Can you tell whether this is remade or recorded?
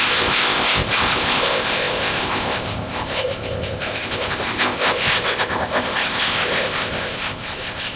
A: remade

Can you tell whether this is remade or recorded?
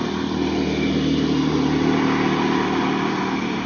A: recorded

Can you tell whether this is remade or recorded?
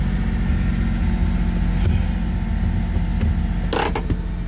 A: recorded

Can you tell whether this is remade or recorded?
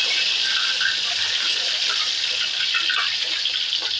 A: recorded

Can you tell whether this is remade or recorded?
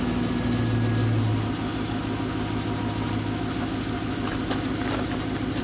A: recorded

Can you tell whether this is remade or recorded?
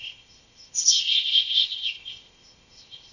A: remade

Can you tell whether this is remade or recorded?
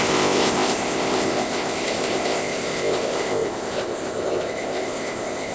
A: remade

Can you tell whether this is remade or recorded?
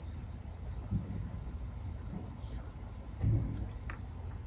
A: recorded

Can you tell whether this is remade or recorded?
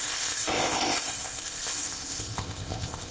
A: remade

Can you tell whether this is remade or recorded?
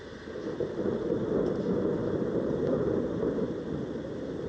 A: recorded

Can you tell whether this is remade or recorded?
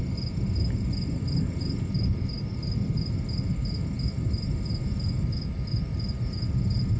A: recorded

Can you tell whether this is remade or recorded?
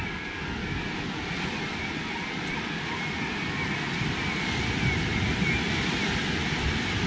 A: recorded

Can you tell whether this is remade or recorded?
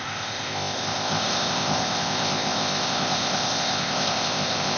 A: remade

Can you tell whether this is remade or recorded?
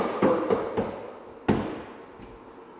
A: recorded